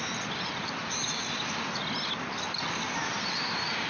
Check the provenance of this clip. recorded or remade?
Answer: recorded